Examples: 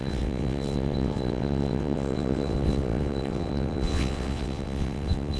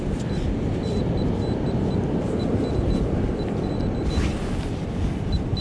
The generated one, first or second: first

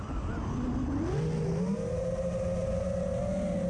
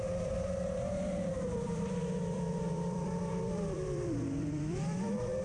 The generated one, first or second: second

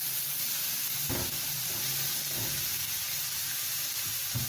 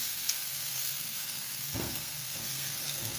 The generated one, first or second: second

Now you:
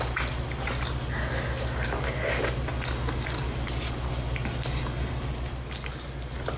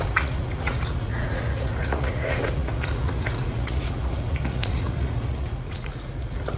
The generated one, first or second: second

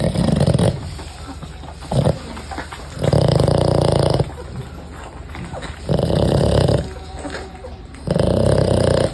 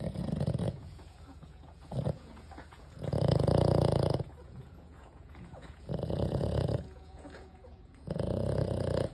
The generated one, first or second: second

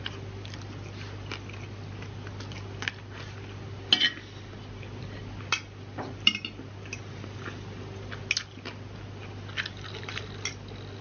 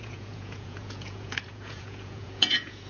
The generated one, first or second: second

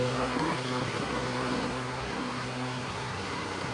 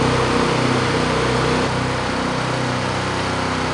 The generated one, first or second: first